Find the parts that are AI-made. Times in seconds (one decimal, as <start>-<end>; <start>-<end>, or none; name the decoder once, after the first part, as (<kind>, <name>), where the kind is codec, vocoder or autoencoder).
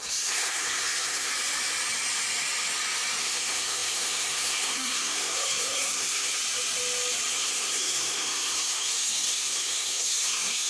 0.0-1.3 (codec, SNAC); 3.2-6.4; 7.3-10.7